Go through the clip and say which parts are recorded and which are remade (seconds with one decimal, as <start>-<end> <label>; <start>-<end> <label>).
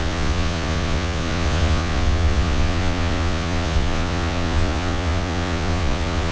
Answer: 0.0-6.3 remade